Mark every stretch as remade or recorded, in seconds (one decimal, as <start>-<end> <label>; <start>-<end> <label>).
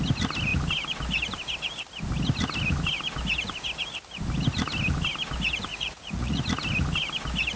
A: 0.0-5.7 recorded; 5.7-6.4 remade; 6.4-7.6 recorded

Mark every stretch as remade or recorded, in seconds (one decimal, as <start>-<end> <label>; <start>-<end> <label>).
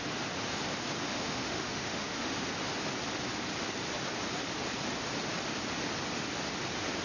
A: 0.0-1.1 recorded; 1.1-2.4 remade; 2.4-7.0 recorded